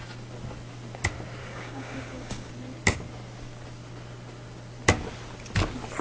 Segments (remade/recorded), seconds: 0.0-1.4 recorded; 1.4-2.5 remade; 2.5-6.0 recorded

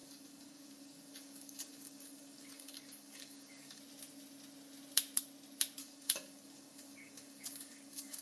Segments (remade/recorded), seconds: 0.0-3.8 remade; 3.8-5.8 recorded; 5.8-8.2 remade